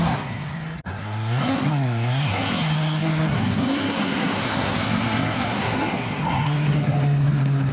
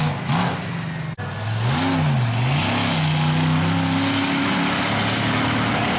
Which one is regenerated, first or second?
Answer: first